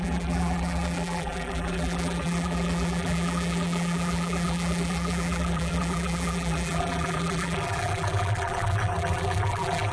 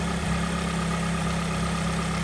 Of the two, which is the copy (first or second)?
first